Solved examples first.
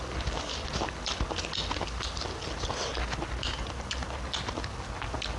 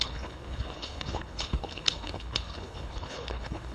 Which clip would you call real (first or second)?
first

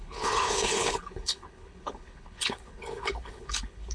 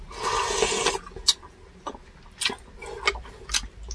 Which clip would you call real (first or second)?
second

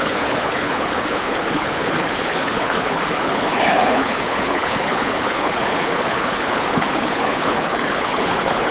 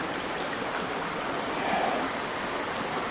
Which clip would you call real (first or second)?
second